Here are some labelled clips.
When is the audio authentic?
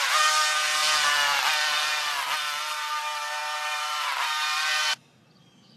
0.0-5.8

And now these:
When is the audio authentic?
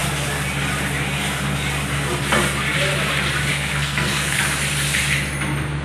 0.0-3.5; 4.4-5.8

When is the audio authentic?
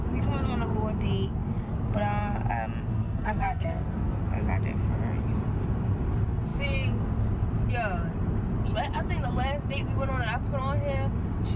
0.0-2.9; 4.2-11.6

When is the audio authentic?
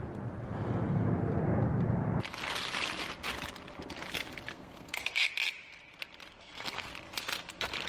0.0-4.5; 5.3-6.3; 6.9-7.9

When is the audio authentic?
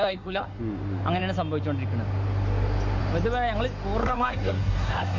0.6-4.0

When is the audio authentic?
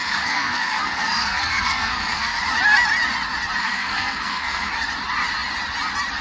2.4-3.6; 4.7-6.2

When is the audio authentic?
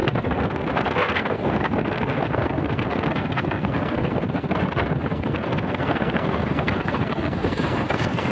none